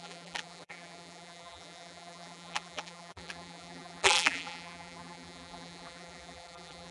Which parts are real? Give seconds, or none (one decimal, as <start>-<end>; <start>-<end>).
none